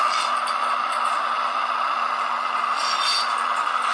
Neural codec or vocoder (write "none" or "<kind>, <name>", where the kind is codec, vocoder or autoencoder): none